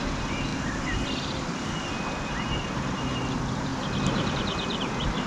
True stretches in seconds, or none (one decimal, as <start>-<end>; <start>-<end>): 0.5-2.3